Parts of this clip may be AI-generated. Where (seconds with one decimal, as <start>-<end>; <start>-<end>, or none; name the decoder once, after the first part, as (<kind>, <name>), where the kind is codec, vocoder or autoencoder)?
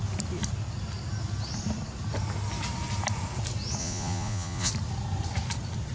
3.8-4.7 (vocoder, Vocos)